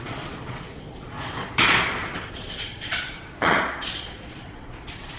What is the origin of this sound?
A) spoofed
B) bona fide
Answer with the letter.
A